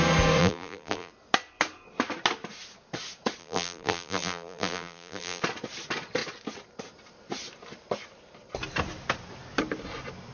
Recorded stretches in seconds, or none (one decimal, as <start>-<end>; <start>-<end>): 0.0-0.4; 1.1-3.4; 5.4-10.3